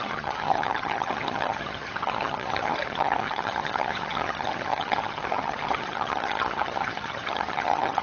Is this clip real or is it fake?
fake